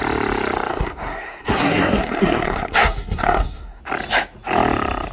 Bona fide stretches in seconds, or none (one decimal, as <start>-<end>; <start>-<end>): 0.0-0.7; 3.8-5.1